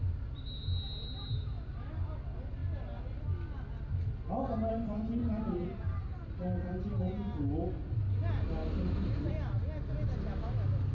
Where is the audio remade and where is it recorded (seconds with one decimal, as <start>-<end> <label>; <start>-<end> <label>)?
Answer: 0.0-5.2 recorded; 5.2-6.9 remade; 6.9-8.6 recorded; 8.6-9.3 remade; 9.3-10.9 recorded